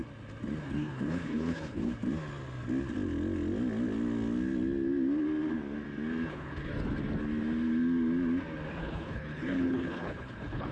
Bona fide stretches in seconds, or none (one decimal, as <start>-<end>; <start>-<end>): 0.0-0.6; 1.9-6.3; 6.7-8.8